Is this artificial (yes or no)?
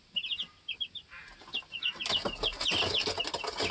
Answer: no